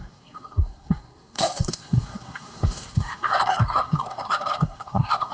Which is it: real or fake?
fake